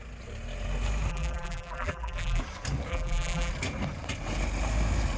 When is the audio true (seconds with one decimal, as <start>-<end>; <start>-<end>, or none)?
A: 0.0-1.1; 2.4-2.9; 3.5-5.2